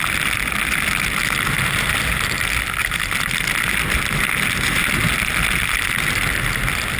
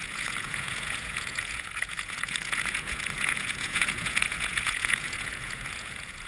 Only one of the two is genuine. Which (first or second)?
first